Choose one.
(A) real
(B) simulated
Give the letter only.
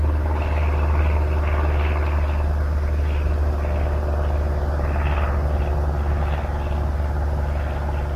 A